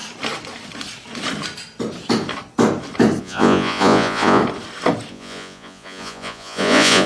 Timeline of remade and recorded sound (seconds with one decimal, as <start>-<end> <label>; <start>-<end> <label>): 0.0-3.2 recorded; 3.2-4.4 remade; 4.4-5.1 recorded; 5.1-7.1 remade